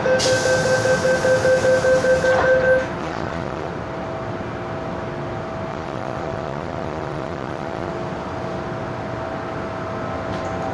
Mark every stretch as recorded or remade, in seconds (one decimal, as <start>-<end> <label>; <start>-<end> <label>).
0.0-3.0 recorded; 3.0-3.7 remade; 3.7-5.7 recorded; 5.7-7.9 remade; 7.9-10.7 recorded